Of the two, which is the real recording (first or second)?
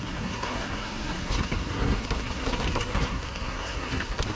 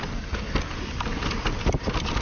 second